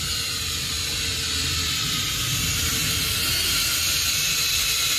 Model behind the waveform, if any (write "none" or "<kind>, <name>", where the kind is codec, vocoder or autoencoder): none